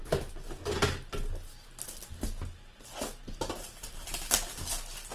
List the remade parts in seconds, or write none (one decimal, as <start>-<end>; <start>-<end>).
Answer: none